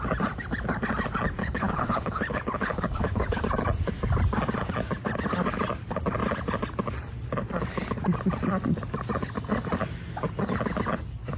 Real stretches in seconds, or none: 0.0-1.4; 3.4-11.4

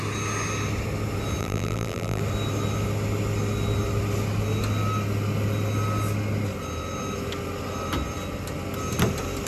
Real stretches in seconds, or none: 0.0-1.4; 2.2-9.5

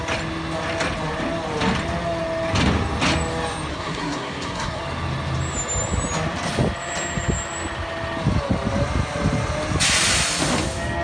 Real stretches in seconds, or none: 0.0-3.7; 4.8-11.0

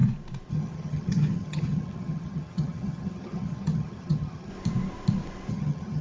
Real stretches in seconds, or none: 0.0-0.5; 4.5-5.5

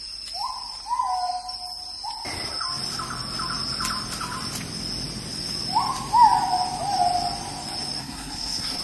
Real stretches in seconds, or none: 0.0-8.0

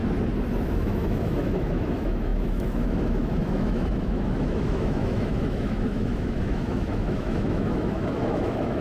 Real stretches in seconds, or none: 0.0-0.7

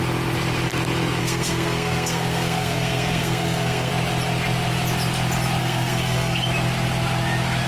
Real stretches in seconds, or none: 0.0-1.2; 3.9-5.6; 6.4-7.7